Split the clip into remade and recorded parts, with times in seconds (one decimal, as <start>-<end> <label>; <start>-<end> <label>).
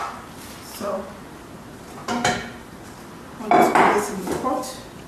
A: 0.0-5.1 recorded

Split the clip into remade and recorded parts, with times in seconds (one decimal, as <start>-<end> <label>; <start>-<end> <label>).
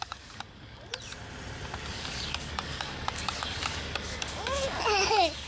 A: 0.0-0.9 remade; 0.9-1.9 recorded; 1.9-5.5 remade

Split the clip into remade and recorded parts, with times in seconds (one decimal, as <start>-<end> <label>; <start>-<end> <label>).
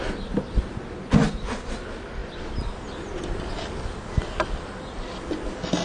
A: 0.0-5.8 recorded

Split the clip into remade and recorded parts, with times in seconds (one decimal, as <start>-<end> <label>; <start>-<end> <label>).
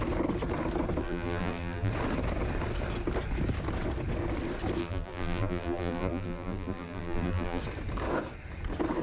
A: 0.0-1.0 recorded; 1.0-1.9 remade; 1.9-4.8 recorded; 4.8-7.6 remade; 7.6-9.0 recorded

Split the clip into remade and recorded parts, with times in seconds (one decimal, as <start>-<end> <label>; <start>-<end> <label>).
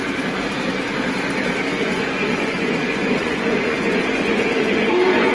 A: 0.0-1.7 recorded; 1.7-5.3 remade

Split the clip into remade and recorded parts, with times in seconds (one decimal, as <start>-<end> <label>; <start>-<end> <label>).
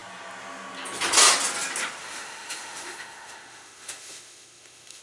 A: 0.0-2.0 recorded; 2.0-5.0 remade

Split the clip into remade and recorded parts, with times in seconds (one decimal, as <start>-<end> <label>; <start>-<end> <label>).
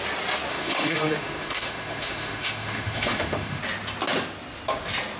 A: 0.0-0.5 recorded; 0.5-3.6 remade; 3.6-5.2 recorded